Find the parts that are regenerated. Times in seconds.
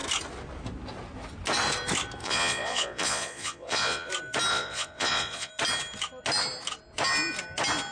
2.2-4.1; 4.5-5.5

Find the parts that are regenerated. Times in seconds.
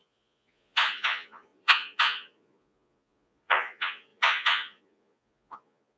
0.0-6.0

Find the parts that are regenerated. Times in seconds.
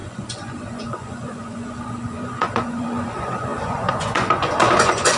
0.0-5.2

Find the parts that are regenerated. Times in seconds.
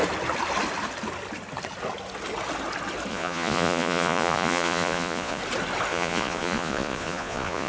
3.1-5.4; 5.9-7.7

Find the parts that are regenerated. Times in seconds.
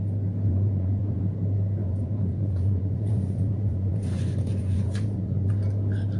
0.5-1.2; 1.8-5.5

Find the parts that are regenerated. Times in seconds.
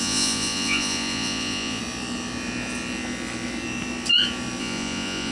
0.0-1.8; 4.6-5.3